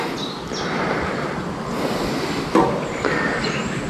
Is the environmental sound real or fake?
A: real